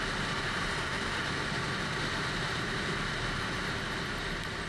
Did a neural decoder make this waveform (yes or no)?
no